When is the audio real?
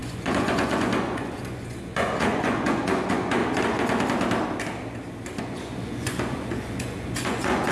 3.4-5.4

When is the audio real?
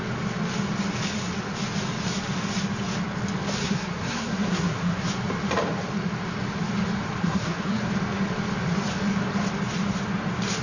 0.0-3.6; 5.1-7.2; 7.9-10.6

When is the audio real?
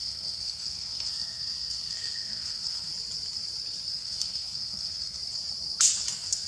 2.9-3.9; 5.2-6.1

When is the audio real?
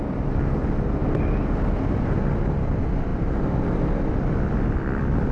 0.0-3.1; 4.1-5.3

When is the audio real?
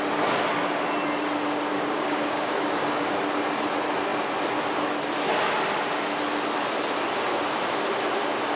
0.0-1.7; 3.1-8.6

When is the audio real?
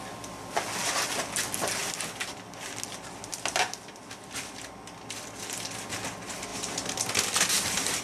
0.0-8.0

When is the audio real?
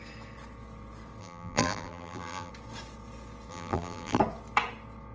0.0-1.2; 2.5-3.5; 4.2-5.1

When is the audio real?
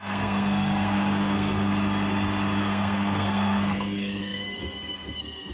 1.7-2.6